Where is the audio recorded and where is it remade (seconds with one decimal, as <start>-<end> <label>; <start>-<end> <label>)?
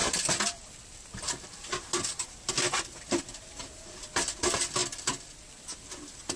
0.0-6.4 recorded